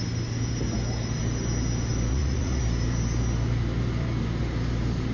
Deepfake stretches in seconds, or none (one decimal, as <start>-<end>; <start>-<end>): 2.1-2.6